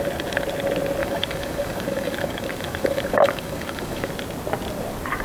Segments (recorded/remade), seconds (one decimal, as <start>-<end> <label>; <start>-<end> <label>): 0.0-1.0 recorded; 1.0-4.1 remade; 4.1-5.2 recorded